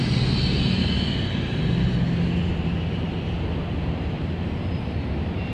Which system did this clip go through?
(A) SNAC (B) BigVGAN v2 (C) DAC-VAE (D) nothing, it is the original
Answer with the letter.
D